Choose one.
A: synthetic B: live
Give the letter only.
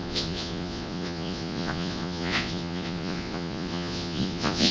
A